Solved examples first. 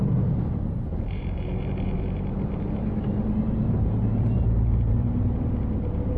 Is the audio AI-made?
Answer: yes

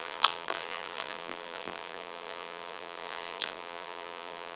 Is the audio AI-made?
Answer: yes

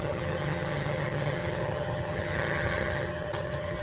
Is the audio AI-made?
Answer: yes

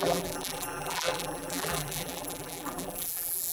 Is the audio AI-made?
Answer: yes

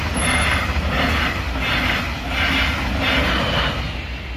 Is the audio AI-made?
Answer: no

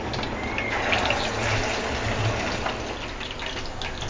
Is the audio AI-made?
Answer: no